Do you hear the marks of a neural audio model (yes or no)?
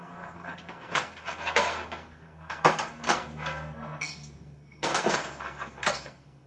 yes